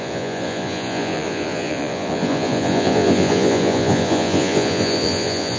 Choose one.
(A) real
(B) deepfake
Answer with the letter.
B